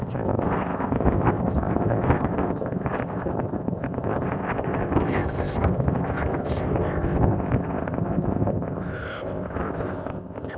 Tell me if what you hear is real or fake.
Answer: fake